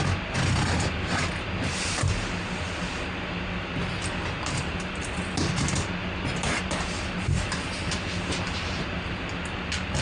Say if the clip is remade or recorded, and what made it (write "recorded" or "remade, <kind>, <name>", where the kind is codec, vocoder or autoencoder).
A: recorded